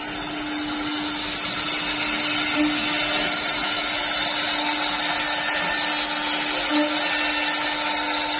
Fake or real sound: real